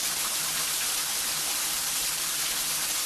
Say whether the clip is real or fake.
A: real